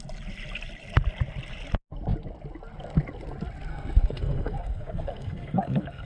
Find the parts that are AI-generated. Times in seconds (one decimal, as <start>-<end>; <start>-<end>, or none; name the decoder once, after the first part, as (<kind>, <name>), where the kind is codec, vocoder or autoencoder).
3.7-6.1 (codec, SNAC)